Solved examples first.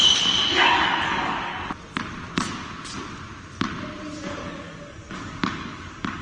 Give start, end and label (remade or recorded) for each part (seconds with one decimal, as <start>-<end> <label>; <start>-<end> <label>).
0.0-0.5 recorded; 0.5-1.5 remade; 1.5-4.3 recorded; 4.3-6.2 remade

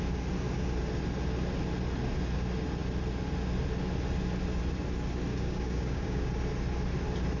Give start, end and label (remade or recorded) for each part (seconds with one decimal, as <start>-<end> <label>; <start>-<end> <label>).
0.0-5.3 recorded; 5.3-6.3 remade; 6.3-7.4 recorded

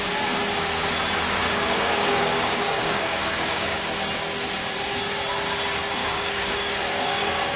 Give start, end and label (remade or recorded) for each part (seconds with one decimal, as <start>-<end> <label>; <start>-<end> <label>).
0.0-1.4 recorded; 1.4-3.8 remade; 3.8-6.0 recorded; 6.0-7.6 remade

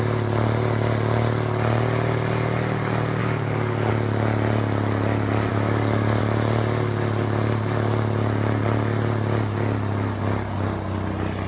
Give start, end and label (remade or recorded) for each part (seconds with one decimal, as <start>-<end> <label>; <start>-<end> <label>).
0.0-3.2 recorded; 3.2-3.9 remade; 3.9-5.5 recorded; 5.5-6.2 remade; 6.2-11.5 recorded

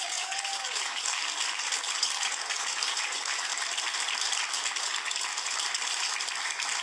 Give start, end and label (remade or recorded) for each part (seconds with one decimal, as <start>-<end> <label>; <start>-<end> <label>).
0.0-1.2 remade; 1.2-2.0 recorded; 2.0-3.5 remade; 3.5-4.8 recorded; 4.8-5.3 remade; 5.3-6.8 recorded

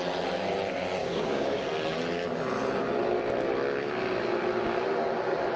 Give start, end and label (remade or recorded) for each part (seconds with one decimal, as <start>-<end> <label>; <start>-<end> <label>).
0.0-1.0 recorded; 1.0-1.6 remade; 1.6-5.6 recorded

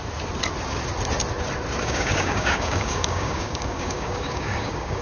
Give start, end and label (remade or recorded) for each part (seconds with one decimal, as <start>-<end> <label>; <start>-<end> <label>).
0.0-1.8 recorded; 1.8-5.0 remade